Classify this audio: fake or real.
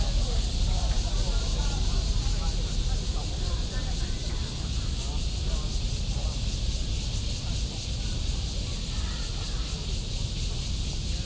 real